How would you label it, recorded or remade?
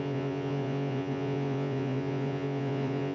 remade